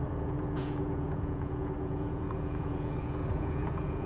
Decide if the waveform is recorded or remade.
remade